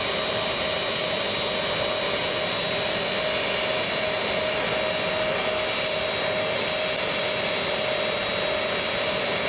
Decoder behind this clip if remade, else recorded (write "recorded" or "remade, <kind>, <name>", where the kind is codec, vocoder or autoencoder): recorded